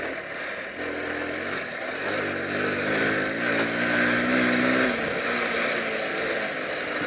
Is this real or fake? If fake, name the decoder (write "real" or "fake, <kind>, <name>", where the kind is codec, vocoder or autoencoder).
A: real